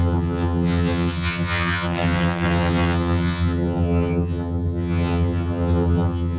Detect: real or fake fake